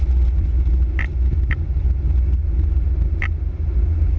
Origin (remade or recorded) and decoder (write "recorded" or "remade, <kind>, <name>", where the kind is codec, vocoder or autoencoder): recorded